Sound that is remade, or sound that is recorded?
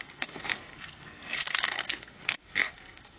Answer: remade